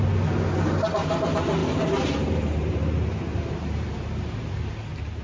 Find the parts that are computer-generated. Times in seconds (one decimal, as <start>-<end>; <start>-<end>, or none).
1.6-4.7